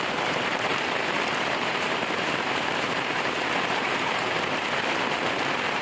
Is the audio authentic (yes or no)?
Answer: no